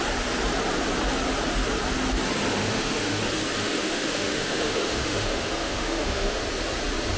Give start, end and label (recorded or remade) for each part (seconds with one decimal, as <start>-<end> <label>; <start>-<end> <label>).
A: 0.0-2.6 recorded; 2.6-3.2 remade; 3.2-3.6 recorded; 3.6-6.4 remade; 6.4-7.2 recorded